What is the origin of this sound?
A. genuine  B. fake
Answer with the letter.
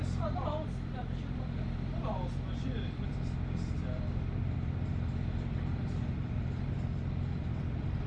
B